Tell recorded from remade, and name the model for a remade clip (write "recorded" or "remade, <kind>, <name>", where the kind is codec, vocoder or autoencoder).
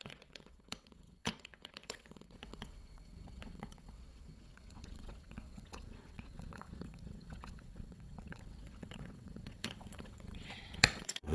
remade, vocoder, WaveNeXt